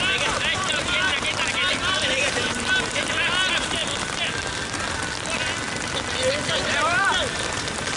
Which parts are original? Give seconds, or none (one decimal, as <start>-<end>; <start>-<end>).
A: 1.1-1.7; 3.8-6.7